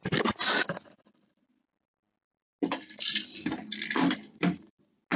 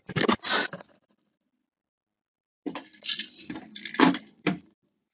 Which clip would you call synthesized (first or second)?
second